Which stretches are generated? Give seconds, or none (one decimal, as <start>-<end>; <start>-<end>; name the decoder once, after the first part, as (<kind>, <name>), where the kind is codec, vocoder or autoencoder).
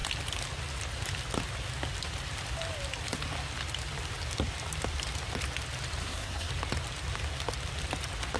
6.0-6.5 (codec, SNAC)